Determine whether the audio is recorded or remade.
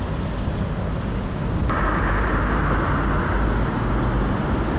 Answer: recorded